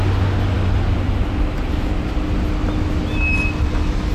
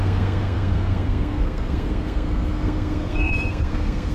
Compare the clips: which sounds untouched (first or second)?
first